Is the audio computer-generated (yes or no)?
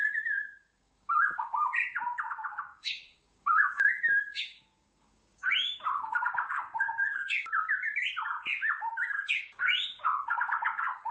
yes